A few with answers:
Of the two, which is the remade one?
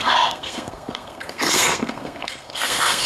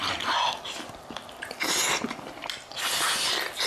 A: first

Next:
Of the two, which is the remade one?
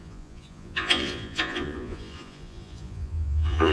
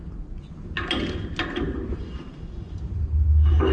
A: first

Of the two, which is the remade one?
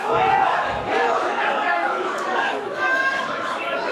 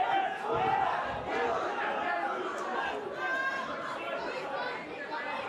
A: first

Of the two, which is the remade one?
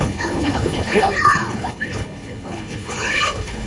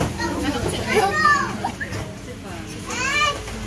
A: first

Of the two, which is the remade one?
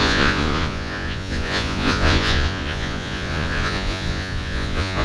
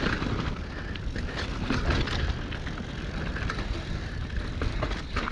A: first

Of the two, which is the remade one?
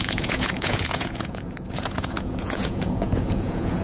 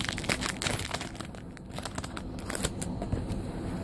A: first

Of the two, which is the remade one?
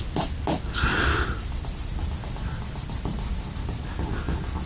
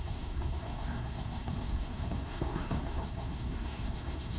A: second